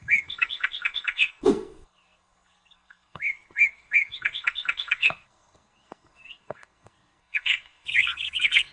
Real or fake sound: fake